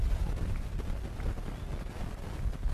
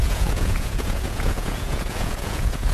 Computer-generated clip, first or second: second